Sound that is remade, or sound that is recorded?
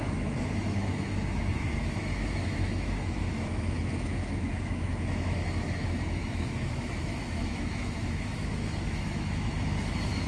remade